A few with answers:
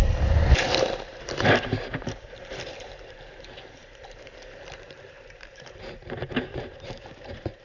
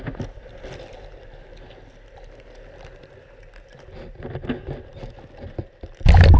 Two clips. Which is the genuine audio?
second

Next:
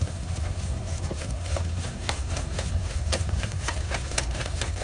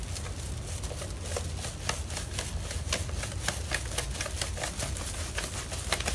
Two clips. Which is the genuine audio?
second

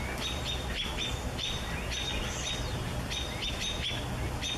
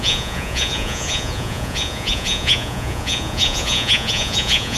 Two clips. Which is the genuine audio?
first